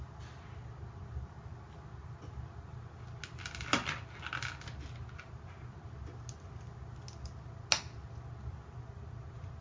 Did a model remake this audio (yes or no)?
no